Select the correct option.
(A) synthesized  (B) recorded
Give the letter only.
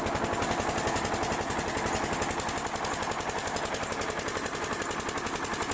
B